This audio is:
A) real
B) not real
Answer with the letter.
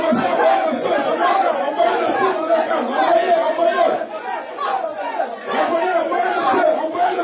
B